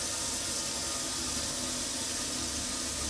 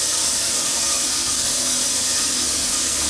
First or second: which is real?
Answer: first